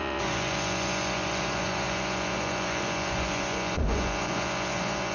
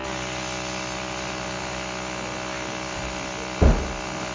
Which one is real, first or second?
second